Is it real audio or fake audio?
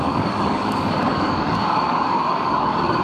fake